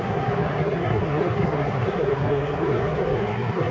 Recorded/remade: remade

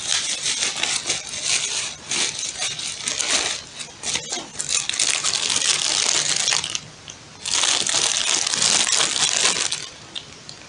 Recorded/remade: recorded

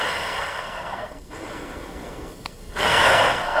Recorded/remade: remade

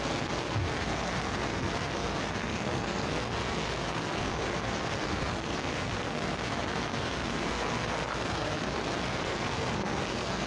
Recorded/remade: remade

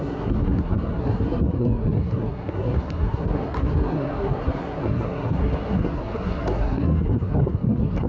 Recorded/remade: remade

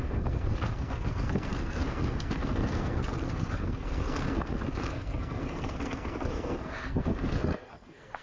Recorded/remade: remade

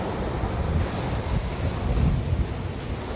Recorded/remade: recorded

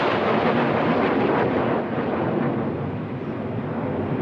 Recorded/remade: recorded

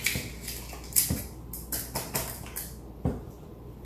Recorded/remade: recorded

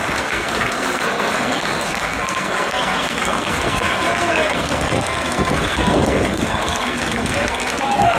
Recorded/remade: remade